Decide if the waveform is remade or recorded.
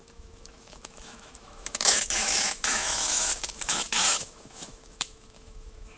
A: remade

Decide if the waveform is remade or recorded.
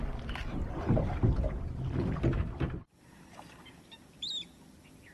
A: recorded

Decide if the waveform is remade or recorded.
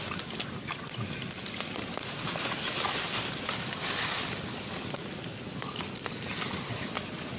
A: recorded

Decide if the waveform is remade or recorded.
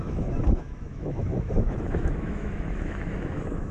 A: remade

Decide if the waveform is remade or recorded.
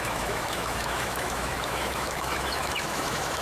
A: remade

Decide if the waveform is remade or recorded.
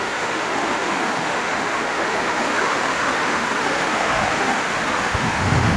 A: remade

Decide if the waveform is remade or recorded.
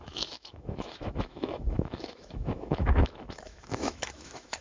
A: remade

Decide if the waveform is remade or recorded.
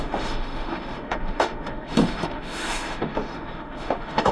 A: remade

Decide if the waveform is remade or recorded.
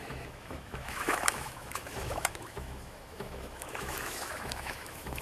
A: remade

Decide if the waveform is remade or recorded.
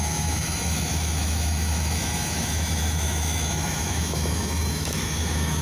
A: remade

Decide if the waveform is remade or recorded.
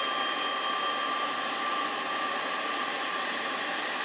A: recorded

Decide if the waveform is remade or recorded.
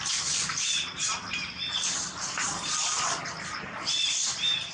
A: recorded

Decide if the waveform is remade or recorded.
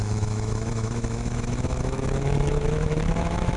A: remade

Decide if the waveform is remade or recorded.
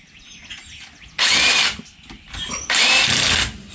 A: recorded